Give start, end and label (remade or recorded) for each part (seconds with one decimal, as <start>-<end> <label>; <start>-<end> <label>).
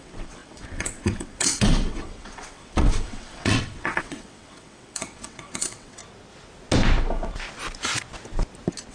0.0-6.0 remade; 6.0-8.9 recorded